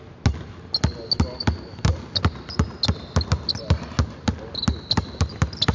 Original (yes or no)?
yes